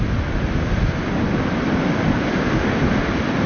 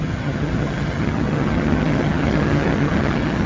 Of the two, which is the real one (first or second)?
first